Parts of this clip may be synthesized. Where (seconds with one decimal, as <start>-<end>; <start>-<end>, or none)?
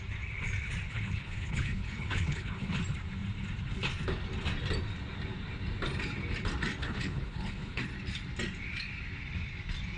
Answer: 0.9-2.8; 6.8-7.8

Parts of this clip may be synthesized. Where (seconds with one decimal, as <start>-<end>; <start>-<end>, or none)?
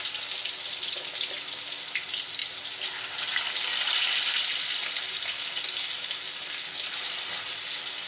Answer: none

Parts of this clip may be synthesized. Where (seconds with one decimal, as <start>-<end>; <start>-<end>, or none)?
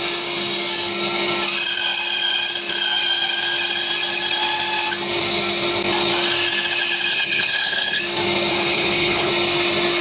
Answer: 7.1-8.0; 8.5-9.3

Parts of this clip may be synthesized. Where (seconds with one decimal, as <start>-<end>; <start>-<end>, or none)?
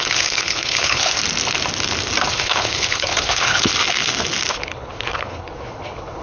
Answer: 0.0-1.2; 2.3-3.7; 4.5-6.2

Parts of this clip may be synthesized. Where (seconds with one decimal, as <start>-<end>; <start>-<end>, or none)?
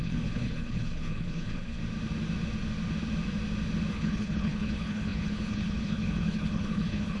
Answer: 0.0-1.8; 3.9-7.2